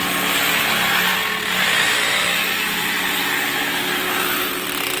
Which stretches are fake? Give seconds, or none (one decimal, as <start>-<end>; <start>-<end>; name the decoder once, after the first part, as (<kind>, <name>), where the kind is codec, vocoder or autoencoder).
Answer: 0.5-5.0 (vocoder, BigVGAN v2)